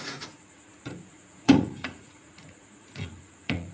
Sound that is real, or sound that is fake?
fake